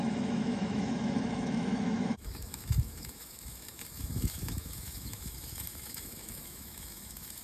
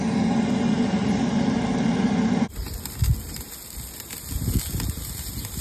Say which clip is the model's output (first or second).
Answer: first